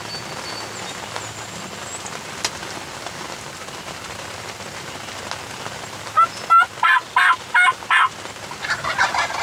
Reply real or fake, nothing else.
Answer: real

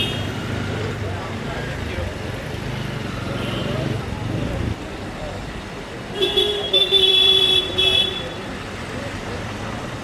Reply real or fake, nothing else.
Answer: fake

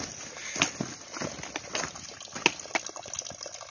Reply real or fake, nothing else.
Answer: real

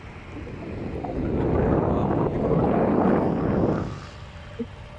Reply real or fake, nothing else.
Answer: real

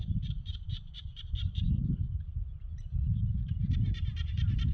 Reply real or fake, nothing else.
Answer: fake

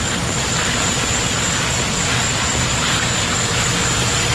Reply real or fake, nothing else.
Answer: fake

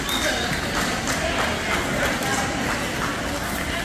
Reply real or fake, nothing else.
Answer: real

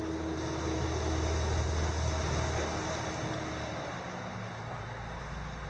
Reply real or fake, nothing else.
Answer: real